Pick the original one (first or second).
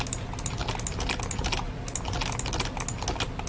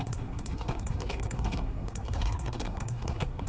first